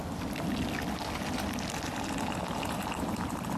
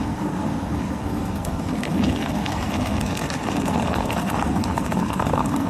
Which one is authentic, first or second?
first